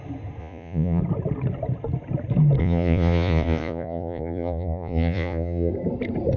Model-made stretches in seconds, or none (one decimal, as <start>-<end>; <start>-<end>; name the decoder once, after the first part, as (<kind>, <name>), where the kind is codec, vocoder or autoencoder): 0.4-1.0 (vocoder, Vocos); 2.6-5.7